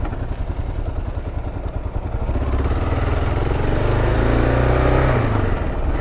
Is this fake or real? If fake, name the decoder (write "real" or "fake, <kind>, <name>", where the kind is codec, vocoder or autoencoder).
real